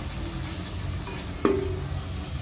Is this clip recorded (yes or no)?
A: yes